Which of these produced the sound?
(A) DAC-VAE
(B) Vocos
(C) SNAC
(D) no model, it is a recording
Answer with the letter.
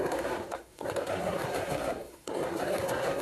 C